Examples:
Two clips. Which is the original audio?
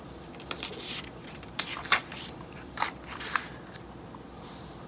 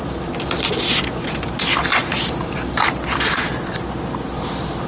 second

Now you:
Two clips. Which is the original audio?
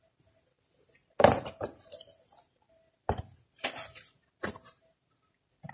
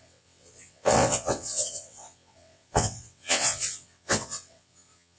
first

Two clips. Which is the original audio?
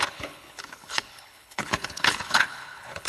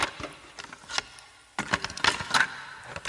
second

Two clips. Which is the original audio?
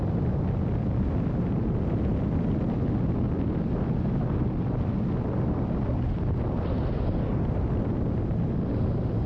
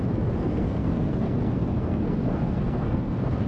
first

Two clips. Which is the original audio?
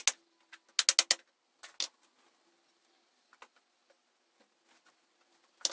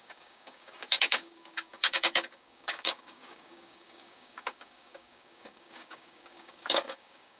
first